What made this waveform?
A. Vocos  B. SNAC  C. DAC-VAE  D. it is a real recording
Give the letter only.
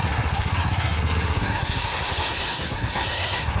B